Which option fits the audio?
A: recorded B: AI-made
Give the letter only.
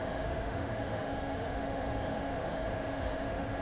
B